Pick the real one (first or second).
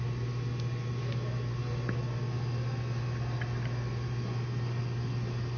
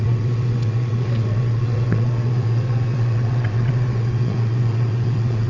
first